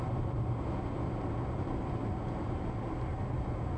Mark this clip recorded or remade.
recorded